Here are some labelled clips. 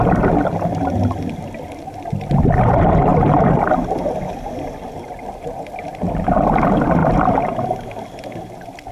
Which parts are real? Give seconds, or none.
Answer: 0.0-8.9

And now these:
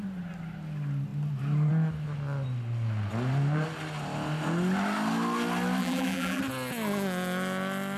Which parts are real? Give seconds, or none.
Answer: 0.0-5.8; 6.4-8.0

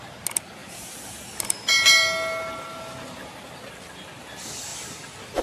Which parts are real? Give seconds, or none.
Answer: 0.0-5.4

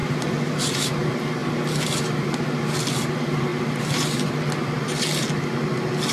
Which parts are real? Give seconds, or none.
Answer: 0.8-6.1

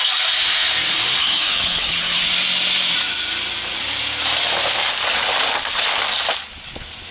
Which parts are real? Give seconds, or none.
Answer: 0.0-1.2; 2.2-7.1

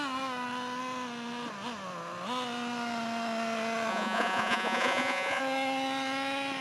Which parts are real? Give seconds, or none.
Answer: 0.0-3.9; 5.4-6.6

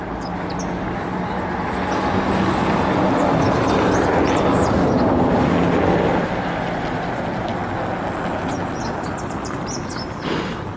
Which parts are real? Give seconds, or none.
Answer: 0.0-10.8